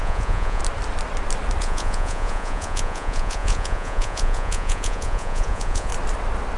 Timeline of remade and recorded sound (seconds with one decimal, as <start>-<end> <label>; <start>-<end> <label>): 0.0-0.6 remade; 0.6-1.6 recorded; 1.6-5.9 remade; 5.9-6.6 recorded